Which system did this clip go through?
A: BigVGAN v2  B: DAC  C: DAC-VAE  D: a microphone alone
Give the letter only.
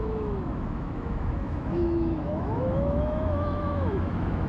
C